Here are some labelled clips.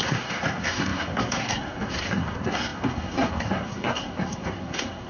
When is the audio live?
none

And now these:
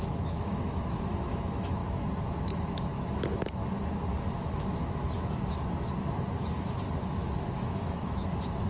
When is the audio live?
1.8-2.3; 3.6-4.2; 5.0-7.0

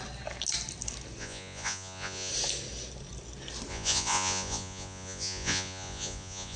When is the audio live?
0.0-1.2; 2.3-3.7

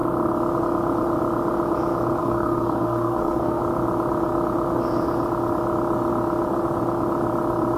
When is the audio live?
0.0-2.2; 3.6-7.8

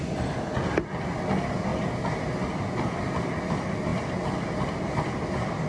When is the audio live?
0.0-5.7

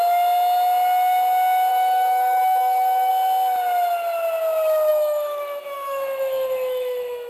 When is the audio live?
0.0-1.7; 3.1-4.9